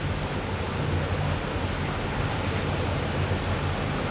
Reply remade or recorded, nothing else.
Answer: recorded